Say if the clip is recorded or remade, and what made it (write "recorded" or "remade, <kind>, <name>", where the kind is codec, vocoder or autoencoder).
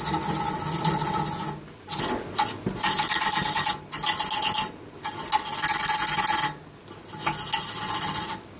recorded